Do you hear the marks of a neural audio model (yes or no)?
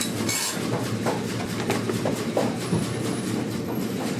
no